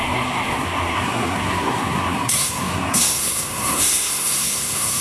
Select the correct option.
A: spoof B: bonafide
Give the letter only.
A